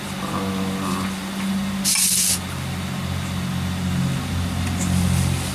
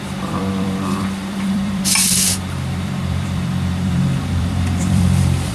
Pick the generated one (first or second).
second